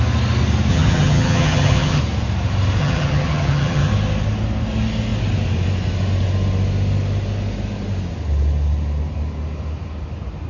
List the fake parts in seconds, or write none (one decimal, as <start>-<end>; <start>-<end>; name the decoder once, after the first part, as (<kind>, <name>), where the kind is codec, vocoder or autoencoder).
0.7-2.0 (vocoder, HiFi-GAN); 2.8-3.9